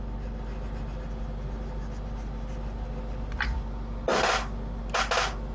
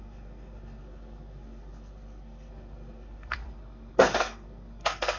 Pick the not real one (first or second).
second